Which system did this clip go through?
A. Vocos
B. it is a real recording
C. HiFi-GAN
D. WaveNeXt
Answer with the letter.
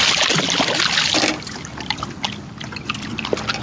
B